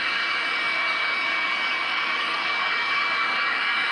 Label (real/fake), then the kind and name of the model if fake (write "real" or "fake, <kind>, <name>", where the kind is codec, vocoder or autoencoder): fake, codec, DAC